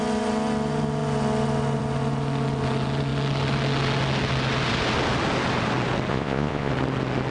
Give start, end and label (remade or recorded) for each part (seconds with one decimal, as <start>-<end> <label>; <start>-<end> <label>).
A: 0.0-6.1 recorded; 6.1-6.7 remade; 6.7-7.3 recorded